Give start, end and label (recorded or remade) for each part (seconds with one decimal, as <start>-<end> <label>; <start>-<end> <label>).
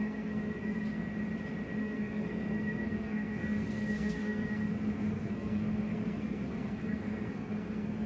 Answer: 0.0-1.1 remade; 1.1-1.8 recorded; 1.8-8.1 remade